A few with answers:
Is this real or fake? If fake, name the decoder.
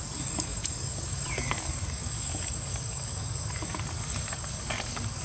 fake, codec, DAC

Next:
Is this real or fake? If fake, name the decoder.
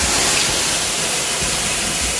real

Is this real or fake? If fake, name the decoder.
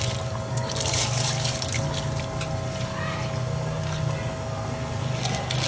real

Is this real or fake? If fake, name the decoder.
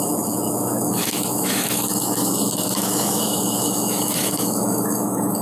fake, autoencoder, DAC-VAE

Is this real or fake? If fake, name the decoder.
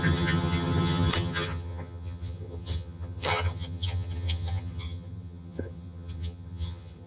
fake, vocoder, HiFi-GAN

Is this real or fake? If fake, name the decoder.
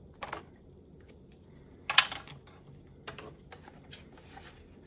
real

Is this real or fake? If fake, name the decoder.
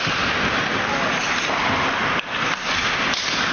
real